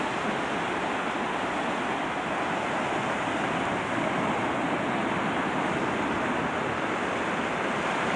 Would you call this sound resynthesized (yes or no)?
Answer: no